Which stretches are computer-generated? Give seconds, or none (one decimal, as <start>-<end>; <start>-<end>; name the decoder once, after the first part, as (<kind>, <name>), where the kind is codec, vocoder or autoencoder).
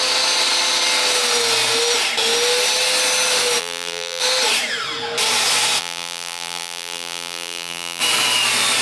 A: 3.6-4.2 (vocoder, BigVGAN v2); 5.8-8.0